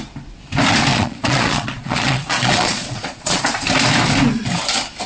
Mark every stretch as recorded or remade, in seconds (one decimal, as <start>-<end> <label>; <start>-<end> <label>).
0.0-0.9 recorded; 0.9-3.4 remade; 3.4-5.1 recorded